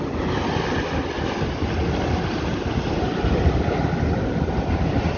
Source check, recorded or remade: recorded